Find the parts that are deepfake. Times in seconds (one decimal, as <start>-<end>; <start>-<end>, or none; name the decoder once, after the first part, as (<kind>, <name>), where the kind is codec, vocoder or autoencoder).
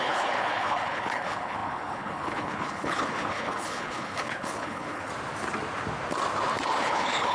0.0-5.1 (codec, HILCodec); 6.8-7.3